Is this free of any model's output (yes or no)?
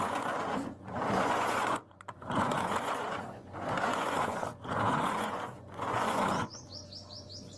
no